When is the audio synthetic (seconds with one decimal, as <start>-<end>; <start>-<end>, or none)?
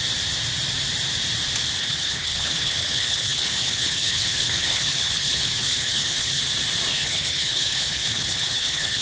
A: 1.8-6.4; 6.9-9.0